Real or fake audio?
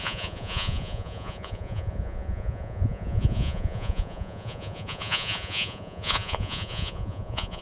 fake